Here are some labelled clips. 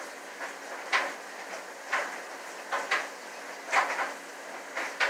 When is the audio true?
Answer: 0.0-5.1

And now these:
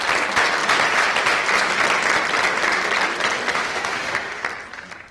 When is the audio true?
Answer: 0.0-3.5; 4.4-5.1

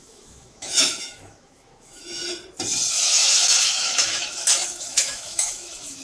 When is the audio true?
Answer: 2.2-2.9

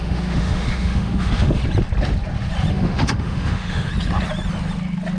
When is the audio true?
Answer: 1.6-2.7; 3.9-5.2